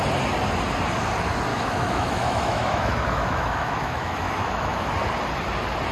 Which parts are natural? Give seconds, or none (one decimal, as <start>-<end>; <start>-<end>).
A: 0.0-1.5; 4.9-5.9